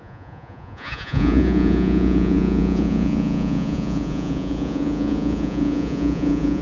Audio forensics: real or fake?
fake